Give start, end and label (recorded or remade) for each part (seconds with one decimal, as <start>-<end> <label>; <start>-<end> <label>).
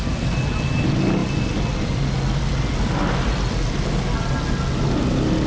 0.0-5.5 recorded